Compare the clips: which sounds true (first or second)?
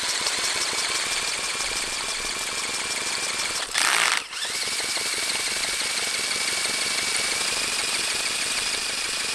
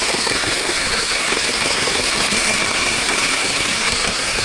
first